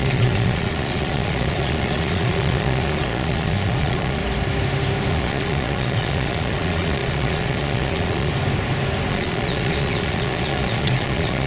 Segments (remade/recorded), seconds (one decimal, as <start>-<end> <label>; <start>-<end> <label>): 0.0-4.2 remade; 4.2-5.1 recorded; 5.1-8.3 remade; 8.3-9.1 recorded; 9.1-11.5 remade